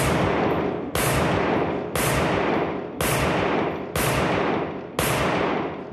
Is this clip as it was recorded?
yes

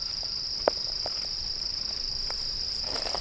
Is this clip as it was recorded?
no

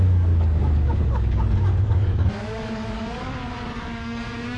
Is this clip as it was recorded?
no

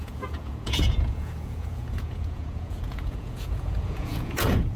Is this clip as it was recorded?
no